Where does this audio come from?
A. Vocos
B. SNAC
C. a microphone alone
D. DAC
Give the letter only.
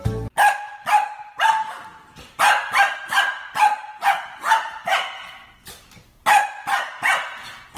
C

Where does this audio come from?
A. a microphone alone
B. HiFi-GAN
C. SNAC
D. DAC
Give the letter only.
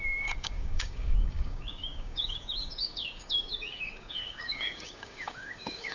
D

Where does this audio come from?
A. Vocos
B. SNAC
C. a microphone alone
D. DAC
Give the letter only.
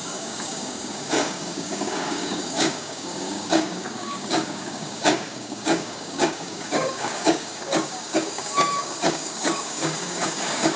D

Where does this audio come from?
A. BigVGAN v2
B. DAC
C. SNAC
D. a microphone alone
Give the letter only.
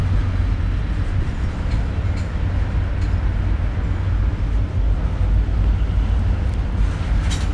D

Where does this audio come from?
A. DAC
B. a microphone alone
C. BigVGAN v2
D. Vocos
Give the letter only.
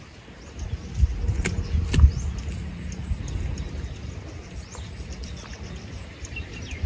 B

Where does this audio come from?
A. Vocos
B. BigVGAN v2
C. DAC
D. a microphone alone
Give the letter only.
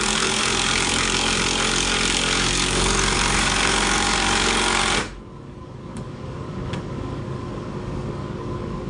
C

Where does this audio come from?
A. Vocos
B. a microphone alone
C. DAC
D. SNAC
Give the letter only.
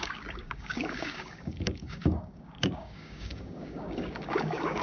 C